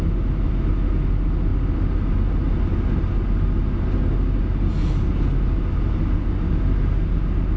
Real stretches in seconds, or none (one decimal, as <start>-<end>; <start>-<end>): 0.0-7.6